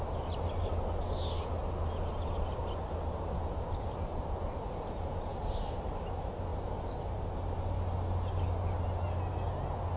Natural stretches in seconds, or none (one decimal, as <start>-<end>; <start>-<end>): 0.0-10.0